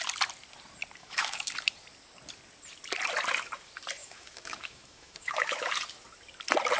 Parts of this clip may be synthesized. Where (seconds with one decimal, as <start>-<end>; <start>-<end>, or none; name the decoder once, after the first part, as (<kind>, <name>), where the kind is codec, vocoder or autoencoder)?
1.0-1.5 (autoencoder, DAC-VAE); 4.0-5.7